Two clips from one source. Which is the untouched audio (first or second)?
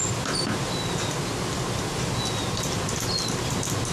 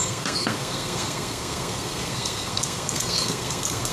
first